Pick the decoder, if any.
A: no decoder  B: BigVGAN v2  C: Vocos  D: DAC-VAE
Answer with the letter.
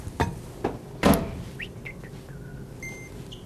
A